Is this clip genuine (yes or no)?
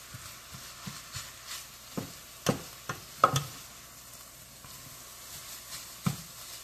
yes